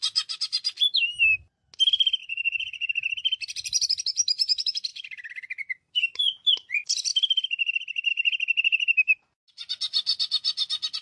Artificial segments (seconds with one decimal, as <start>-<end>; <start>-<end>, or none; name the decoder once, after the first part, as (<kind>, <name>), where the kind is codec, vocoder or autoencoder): 2.2-2.9 (vocoder, Vocos)